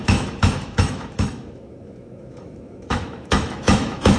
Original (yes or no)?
no